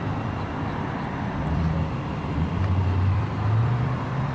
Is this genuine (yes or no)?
no